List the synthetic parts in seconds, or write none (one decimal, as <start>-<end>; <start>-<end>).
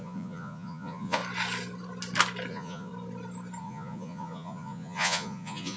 0.0-1.2; 2.5-2.9; 3.6-5.8